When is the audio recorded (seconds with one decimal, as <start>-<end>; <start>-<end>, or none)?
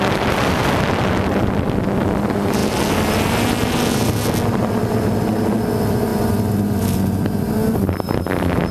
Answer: 0.0-8.7